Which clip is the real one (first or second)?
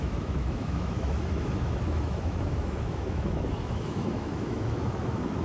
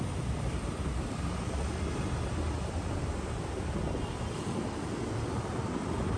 second